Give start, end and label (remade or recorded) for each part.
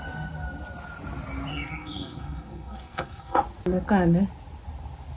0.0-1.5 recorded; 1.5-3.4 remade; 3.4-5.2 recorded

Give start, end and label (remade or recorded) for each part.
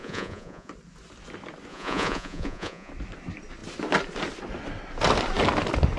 0.0-0.7 remade; 0.7-1.7 recorded; 1.7-2.9 remade; 2.9-6.0 recorded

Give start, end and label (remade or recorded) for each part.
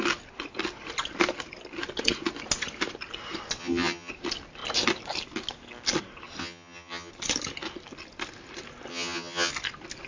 0.0-3.6 recorded; 3.6-4.1 remade; 4.1-6.4 recorded; 6.4-7.1 remade; 7.1-8.9 recorded; 8.9-9.5 remade; 9.5-10.1 recorded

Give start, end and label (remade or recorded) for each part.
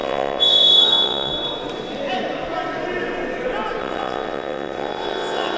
0.0-1.3 remade; 1.3-3.8 recorded; 3.8-5.6 remade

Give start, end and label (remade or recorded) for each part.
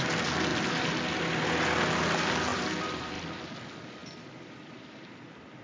0.0-2.5 recorded; 2.5-3.5 remade; 3.5-4.0 recorded; 4.0-5.6 remade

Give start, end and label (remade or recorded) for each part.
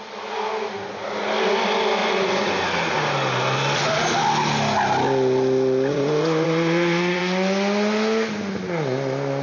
0.0-2.0 recorded; 2.0-2.5 remade; 2.5-5.9 recorded; 5.9-7.2 remade; 7.2-9.4 recorded